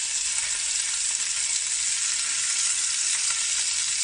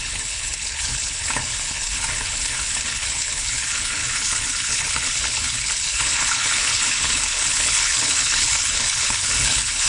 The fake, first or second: second